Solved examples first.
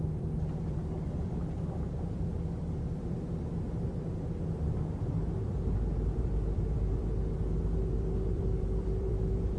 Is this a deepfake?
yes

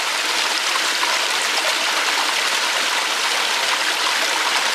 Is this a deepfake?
no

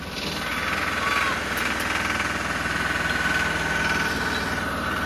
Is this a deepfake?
no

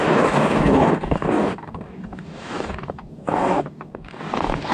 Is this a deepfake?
yes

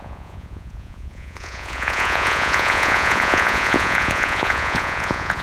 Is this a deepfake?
yes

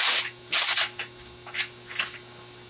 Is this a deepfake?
no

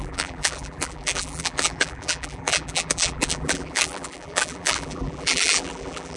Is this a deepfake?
yes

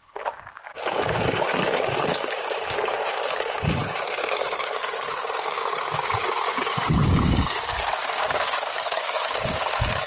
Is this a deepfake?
yes